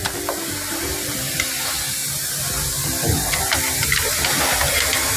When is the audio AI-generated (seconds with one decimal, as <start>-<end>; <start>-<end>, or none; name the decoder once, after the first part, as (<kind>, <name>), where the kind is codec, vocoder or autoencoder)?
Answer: none